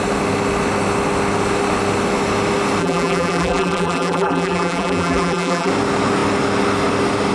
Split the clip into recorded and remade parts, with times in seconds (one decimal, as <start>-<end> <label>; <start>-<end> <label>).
0.0-2.8 recorded; 2.8-5.7 remade; 5.7-7.3 recorded